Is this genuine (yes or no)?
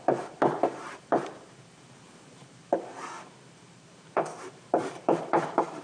no